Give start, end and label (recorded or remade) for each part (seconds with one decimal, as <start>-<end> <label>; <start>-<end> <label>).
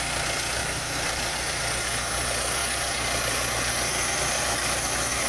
0.0-0.6 recorded; 0.6-1.6 remade; 1.6-5.3 recorded